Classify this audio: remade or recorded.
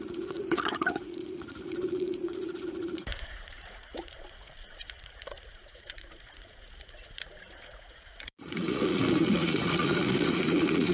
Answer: remade